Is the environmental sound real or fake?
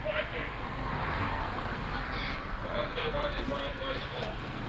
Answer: fake